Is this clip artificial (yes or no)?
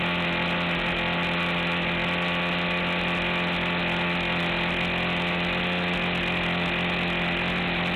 no